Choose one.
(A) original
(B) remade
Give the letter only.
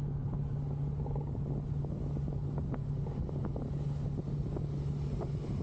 A